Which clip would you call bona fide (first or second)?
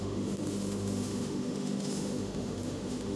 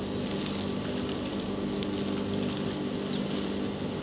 second